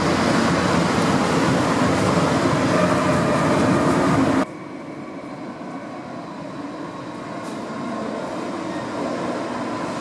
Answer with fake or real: real